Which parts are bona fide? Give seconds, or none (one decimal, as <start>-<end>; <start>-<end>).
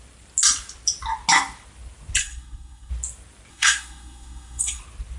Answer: 0.0-2.2; 2.9-3.5; 4.8-5.2